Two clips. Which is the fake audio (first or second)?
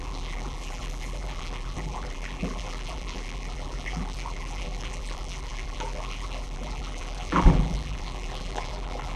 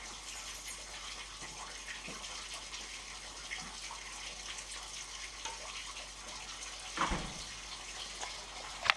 first